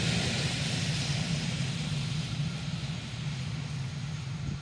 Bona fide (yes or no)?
yes